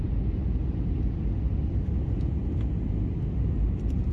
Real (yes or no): yes